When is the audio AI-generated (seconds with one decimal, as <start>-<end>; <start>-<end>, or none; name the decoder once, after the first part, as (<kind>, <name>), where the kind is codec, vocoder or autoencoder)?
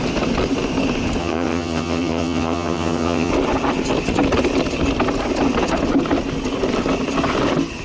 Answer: 1.2-3.3 (vocoder, HiFi-GAN)